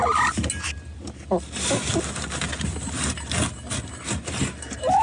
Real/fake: real